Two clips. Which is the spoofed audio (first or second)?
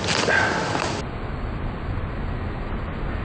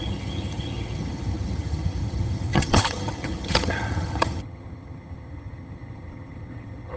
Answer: second